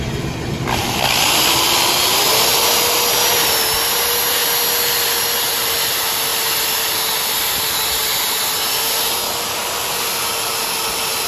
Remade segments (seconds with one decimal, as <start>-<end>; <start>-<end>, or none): none